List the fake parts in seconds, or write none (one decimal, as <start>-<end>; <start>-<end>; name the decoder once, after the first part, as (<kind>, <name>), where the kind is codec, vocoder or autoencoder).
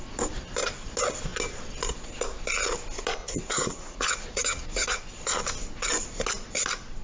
3.2-5.0 (vocoder, Vocos)